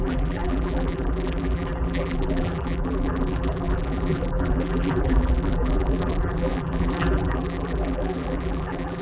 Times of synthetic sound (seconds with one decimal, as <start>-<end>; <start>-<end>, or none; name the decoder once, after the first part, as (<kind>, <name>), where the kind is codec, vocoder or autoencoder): 0.0-9.0 (vocoder, BigVGAN v2)